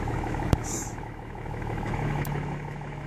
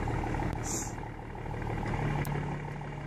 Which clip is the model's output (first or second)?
first